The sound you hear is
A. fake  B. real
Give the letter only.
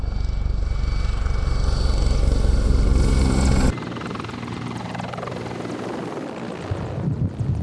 B